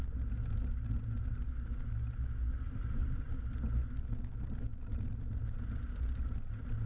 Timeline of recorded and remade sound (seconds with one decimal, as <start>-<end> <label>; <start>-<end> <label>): 0.0-3.0 recorded; 3.0-3.6 remade; 3.6-6.9 recorded